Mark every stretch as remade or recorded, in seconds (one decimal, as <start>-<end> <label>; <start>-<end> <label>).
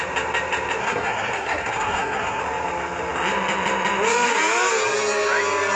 0.0-0.8 recorded; 0.8-2.4 remade; 2.4-5.8 recorded